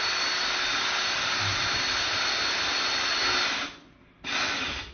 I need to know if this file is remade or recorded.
recorded